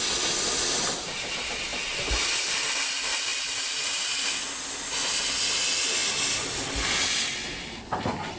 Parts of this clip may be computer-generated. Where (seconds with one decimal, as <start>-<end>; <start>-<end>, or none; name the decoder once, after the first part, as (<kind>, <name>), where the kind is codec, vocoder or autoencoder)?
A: none